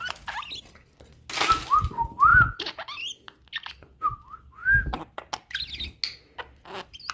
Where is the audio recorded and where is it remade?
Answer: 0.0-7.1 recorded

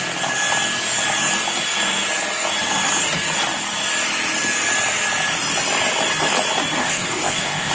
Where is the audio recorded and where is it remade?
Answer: 0.0-6.8 recorded; 6.8-7.7 remade

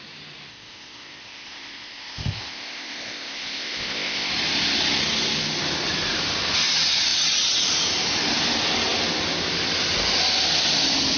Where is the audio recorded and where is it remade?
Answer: 0.0-0.5 recorded; 0.5-4.3 remade; 4.3-11.2 recorded